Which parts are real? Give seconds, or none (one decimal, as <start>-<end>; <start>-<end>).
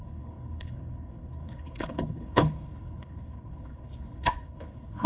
none